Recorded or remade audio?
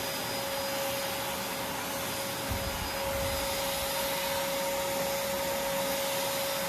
recorded